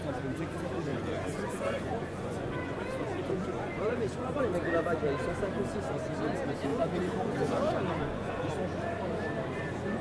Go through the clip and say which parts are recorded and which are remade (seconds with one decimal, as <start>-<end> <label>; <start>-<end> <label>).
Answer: 0.0-0.9 recorded; 0.9-4.4 remade; 4.4-6.7 recorded; 6.7-8.5 remade; 8.5-10.0 recorded

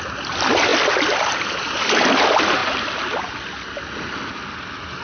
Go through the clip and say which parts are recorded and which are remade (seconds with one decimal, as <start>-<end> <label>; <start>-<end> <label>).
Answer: 0.0-5.0 recorded

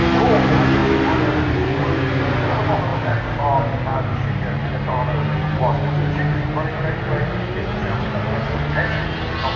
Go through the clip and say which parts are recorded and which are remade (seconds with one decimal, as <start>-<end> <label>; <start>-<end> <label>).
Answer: 0.0-9.6 recorded

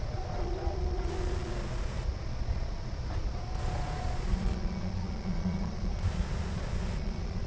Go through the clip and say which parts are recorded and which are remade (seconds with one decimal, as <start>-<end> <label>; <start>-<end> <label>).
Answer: 0.0-7.5 remade

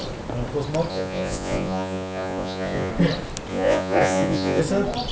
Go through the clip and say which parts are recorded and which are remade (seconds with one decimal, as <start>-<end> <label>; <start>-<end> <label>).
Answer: 0.0-0.9 recorded; 0.9-2.9 remade; 2.9-3.5 recorded; 3.5-4.6 remade; 4.6-5.1 recorded